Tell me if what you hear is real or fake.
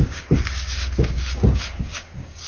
fake